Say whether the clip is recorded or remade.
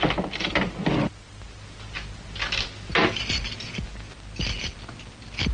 recorded